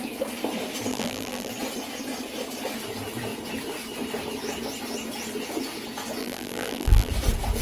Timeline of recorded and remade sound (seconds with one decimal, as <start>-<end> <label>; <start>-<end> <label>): 0.0-0.9 recorded; 0.9-1.5 remade; 1.5-6.2 recorded; 6.2-7.1 remade; 7.1-7.6 recorded